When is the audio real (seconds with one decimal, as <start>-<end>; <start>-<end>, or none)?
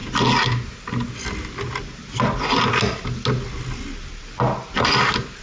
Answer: 0.0-5.4